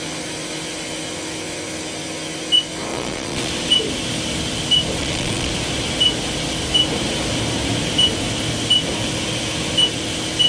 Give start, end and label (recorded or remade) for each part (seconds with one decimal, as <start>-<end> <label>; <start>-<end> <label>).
0.0-2.9 recorded; 2.9-3.5 remade; 3.5-5.0 recorded; 5.0-5.5 remade; 5.5-10.5 recorded